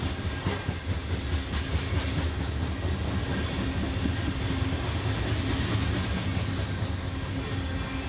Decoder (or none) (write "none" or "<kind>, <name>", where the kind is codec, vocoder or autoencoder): none